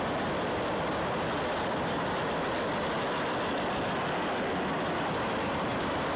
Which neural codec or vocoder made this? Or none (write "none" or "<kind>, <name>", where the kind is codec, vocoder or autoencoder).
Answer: none